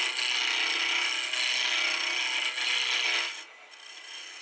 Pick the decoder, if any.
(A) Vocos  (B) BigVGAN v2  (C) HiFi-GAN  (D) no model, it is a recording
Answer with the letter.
D